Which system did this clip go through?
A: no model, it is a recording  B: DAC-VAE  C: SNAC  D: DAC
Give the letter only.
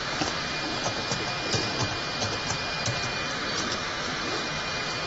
A